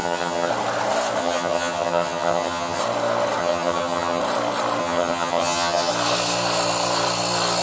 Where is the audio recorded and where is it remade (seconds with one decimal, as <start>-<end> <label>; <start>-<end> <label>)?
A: 0.0-0.5 remade; 0.5-1.2 recorded; 1.2-2.8 remade; 2.8-3.4 recorded; 3.4-4.2 remade; 4.2-4.8 recorded; 4.8-5.9 remade; 5.9-7.6 recorded